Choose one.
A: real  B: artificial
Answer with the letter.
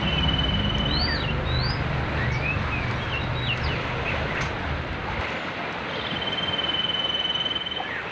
A